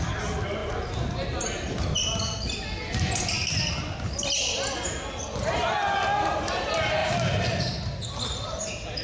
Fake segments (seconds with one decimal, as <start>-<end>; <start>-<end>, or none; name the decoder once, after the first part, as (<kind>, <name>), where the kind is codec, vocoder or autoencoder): none